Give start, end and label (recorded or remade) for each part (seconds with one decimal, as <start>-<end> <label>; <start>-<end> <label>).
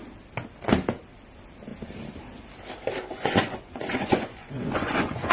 0.0-3.1 recorded; 3.1-5.3 remade